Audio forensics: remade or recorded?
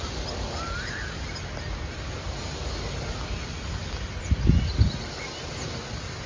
recorded